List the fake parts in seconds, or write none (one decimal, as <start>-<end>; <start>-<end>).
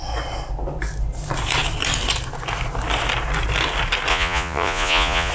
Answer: 4.1-5.3